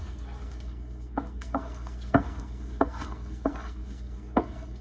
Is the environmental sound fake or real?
fake